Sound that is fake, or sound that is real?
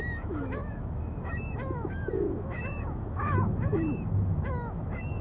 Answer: fake